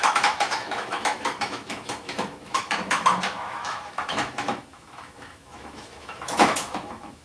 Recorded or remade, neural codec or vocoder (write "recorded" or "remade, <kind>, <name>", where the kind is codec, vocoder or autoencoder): remade, autoencoder, DAC-VAE